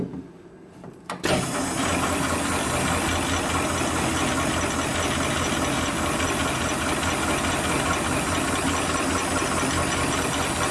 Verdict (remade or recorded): recorded